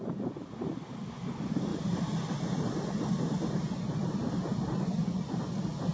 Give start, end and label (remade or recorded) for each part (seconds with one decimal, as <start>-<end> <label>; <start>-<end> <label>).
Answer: 0.0-4.5 recorded; 4.5-5.4 remade; 5.4-5.9 recorded